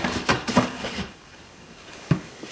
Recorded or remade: remade